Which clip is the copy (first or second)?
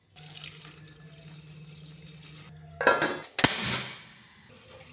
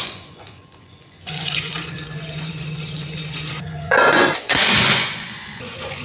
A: second